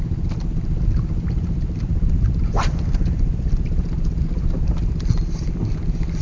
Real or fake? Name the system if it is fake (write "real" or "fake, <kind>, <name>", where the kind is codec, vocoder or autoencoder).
real